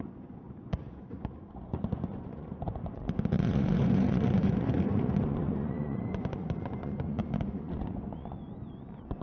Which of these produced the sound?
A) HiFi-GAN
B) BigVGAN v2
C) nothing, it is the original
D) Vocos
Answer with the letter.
D